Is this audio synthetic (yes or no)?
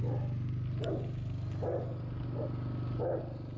no